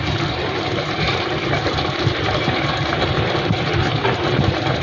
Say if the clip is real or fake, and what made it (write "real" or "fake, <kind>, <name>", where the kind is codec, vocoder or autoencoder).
fake, vocoder, BigVGAN v2